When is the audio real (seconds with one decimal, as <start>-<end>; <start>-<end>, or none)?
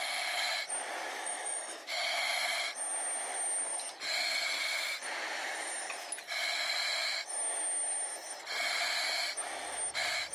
0.0-1.1; 2.4-10.3